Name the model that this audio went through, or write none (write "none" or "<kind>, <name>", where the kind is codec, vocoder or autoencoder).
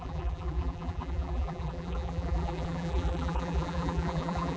vocoder, BigVGAN v2